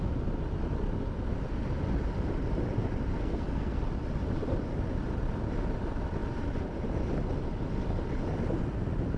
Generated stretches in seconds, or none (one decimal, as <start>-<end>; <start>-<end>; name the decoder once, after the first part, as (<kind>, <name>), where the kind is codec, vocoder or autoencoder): 3.1-3.8 (codec, SNAC)